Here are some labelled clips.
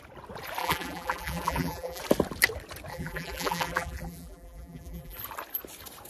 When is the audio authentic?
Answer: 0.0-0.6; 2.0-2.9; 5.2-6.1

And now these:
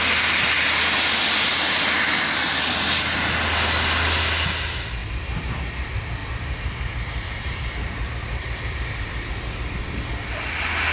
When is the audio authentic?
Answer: 0.0-5.0; 5.8-6.2; 9.3-10.9